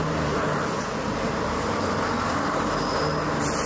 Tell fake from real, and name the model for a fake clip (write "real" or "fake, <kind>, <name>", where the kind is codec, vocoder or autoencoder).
real